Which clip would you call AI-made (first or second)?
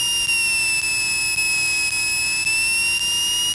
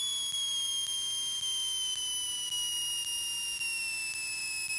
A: second